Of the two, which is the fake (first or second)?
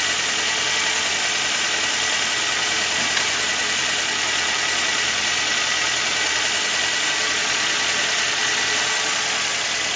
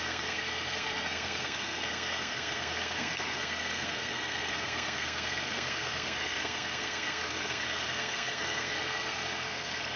second